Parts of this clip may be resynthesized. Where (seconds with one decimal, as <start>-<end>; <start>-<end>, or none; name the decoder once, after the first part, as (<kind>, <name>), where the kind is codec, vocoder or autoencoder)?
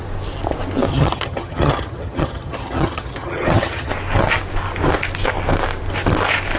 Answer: 0.9-3.9 (vocoder, HiFi-GAN)